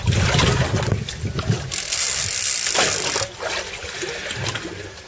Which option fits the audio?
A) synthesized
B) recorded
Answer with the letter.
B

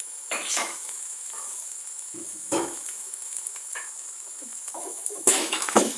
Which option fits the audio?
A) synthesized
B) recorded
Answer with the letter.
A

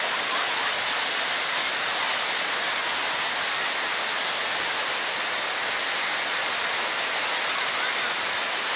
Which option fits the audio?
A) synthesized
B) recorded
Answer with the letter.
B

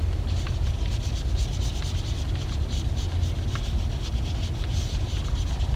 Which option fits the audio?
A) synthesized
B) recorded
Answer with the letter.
B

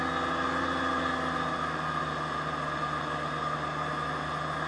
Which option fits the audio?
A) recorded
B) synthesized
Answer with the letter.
A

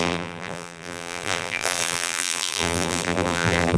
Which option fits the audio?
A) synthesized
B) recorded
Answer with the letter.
A